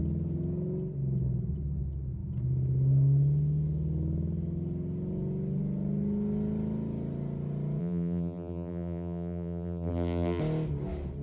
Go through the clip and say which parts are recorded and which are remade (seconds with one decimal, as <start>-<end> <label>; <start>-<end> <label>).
0.0-7.8 recorded; 7.8-10.4 remade; 10.4-11.2 recorded